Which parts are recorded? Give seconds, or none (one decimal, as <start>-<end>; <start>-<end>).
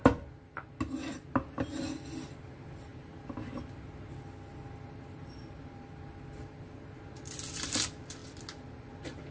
0.0-9.3